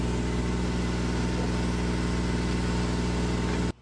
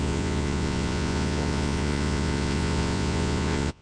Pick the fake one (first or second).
second